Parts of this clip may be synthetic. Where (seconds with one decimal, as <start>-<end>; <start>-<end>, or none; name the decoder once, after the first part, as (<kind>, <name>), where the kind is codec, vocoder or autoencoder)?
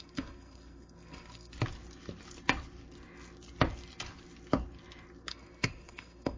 0.0-1.5 (codec, SNAC); 5.3-6.4